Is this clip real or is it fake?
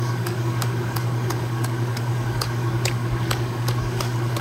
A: fake